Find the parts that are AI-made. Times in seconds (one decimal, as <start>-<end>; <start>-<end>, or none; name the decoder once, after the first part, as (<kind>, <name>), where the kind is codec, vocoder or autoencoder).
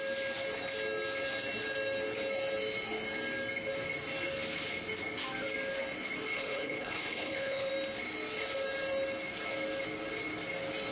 6.3-7.7 (codec, HILCodec)